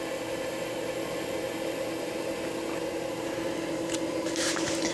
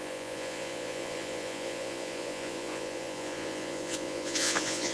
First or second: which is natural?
first